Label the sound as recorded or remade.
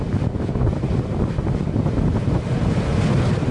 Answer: recorded